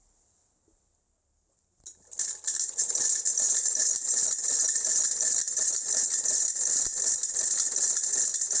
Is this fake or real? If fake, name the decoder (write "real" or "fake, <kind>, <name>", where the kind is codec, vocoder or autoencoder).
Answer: real